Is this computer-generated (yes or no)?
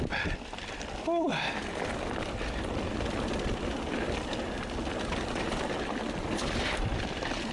no